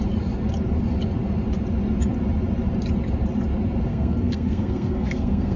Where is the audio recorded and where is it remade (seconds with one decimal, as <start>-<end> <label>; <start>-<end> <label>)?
0.0-3.9 recorded; 3.9-5.6 remade